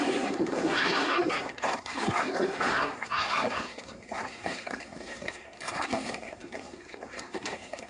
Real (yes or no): no